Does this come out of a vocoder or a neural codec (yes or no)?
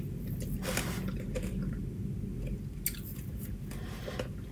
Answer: no